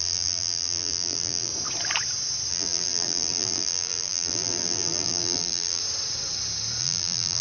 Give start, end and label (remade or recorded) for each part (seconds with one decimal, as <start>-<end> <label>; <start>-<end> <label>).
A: 0.0-1.5 remade; 1.5-2.5 recorded; 2.5-5.8 remade; 5.8-6.8 recorded; 6.8-7.4 remade